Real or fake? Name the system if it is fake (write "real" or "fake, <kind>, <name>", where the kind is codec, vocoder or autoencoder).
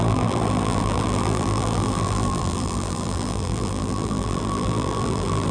fake, vocoder, BigVGAN v2